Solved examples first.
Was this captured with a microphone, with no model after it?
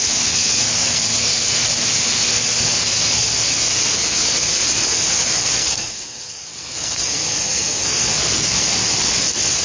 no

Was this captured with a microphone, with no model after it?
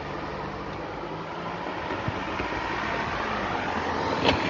yes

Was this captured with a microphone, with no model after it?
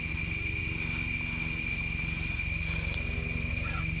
yes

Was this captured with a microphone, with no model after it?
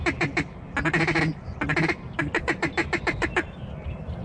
yes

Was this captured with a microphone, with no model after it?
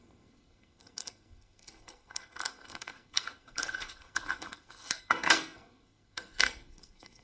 no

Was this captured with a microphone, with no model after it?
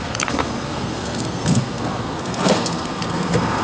no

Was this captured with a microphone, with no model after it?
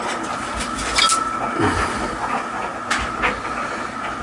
yes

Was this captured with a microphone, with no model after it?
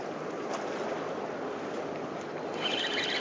yes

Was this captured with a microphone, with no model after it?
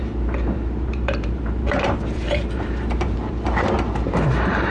no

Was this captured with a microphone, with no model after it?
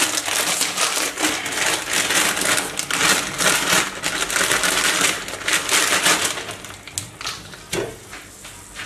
yes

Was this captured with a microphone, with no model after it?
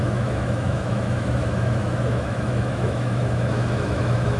no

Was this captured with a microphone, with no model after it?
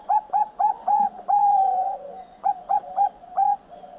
no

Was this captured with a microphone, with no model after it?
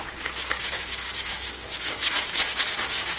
no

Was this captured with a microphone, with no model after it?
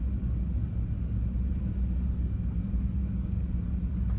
yes